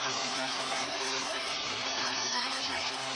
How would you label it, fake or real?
fake